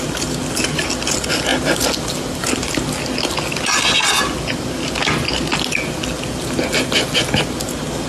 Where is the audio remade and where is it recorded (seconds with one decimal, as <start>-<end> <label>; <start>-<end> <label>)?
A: 0.0-8.1 recorded